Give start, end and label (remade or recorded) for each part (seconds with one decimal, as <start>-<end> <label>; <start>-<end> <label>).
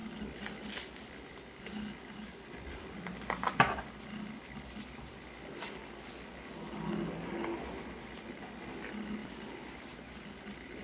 0.0-10.8 recorded